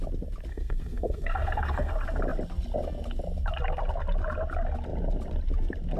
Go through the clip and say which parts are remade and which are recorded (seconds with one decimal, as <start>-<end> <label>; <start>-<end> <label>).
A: 0.0-0.5 recorded; 0.5-1.9 remade; 1.9-6.0 recorded